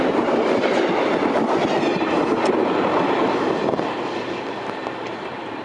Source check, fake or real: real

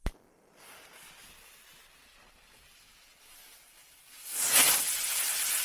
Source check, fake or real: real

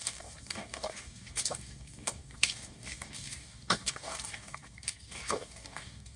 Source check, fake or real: fake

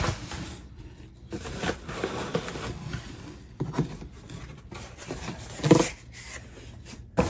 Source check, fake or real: real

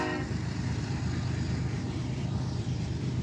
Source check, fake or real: fake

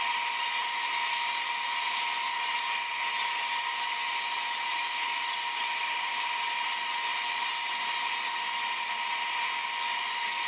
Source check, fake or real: real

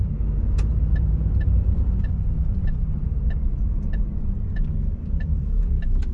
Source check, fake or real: fake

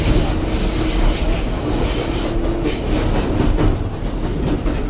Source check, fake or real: real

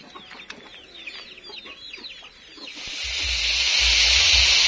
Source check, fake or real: real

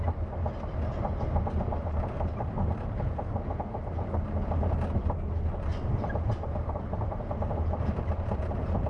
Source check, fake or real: real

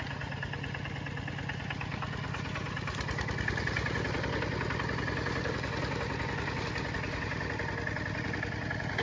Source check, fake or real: real